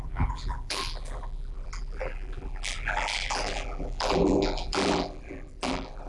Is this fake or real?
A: fake